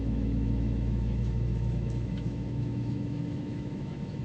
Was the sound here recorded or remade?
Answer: remade